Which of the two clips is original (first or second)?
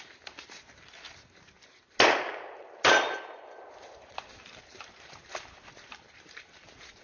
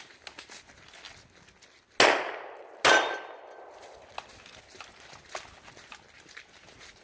second